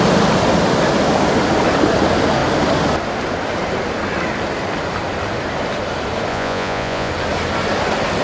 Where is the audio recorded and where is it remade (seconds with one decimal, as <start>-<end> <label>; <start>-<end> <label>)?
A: 0.0-6.3 recorded; 6.3-7.1 remade; 7.1-8.2 recorded